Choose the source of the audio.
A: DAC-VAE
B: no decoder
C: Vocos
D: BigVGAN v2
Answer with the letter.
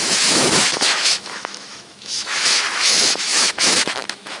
A